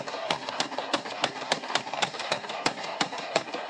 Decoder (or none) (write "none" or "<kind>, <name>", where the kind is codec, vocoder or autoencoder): codec, SNAC